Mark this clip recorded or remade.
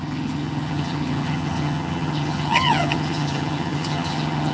remade